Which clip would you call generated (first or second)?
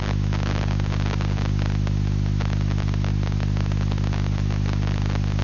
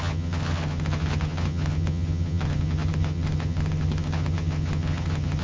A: second